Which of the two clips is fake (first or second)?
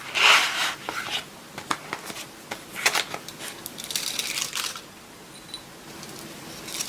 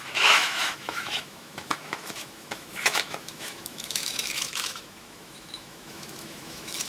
second